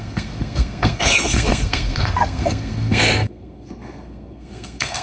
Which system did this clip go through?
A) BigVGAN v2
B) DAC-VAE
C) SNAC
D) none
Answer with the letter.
C